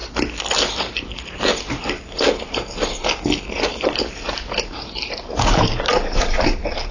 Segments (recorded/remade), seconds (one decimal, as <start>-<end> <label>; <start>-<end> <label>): 0.0-0.7 recorded; 0.7-1.5 remade; 1.5-2.4 recorded; 2.4-3.0 remade; 3.0-3.6 recorded; 3.6-6.9 remade